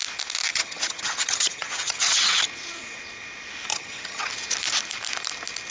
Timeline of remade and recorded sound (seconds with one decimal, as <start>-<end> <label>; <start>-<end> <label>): 0.0-0.5 recorded; 0.5-2.4 remade; 2.4-3.7 recorded; 3.7-4.3 remade; 4.3-5.7 recorded